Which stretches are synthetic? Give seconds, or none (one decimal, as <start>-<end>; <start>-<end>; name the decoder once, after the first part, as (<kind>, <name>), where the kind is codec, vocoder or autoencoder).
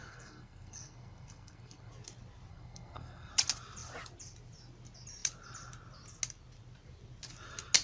0.0-1.9 (codec, SNAC); 2.5-3.3